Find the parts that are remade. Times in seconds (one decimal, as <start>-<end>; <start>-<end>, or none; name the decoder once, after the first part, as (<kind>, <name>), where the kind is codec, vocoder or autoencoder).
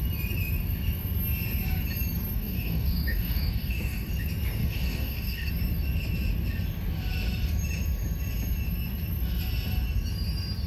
2.3-4.1 (codec, DAC); 4.6-5.5